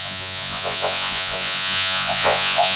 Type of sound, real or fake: fake